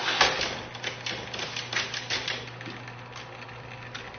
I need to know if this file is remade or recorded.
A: recorded